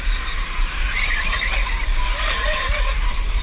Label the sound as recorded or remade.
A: recorded